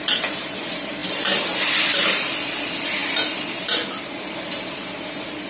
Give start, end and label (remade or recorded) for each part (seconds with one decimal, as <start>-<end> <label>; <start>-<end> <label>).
0.0-5.5 remade

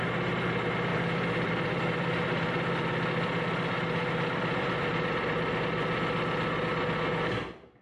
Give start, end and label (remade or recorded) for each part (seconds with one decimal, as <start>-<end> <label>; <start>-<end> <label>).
0.0-0.9 recorded; 0.9-3.1 remade; 3.1-4.0 recorded; 4.0-5.0 remade; 5.0-7.8 recorded

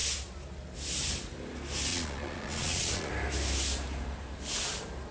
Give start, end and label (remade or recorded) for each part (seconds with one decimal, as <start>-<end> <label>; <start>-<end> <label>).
0.0-1.9 recorded; 1.9-3.1 remade; 3.1-5.1 recorded